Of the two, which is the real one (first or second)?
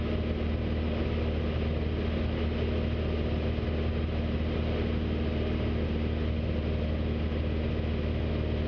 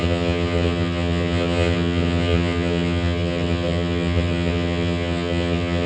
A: first